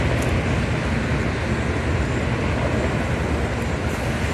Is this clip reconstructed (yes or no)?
no